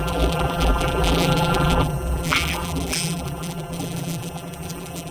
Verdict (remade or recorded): remade